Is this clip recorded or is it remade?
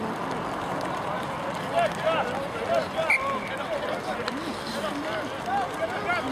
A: recorded